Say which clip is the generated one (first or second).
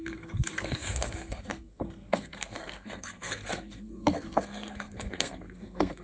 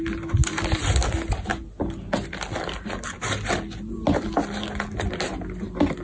first